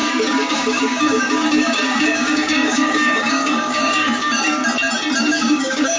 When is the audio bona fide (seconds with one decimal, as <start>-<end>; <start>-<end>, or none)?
4.6-5.2